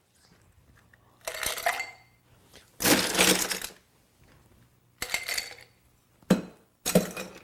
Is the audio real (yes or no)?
yes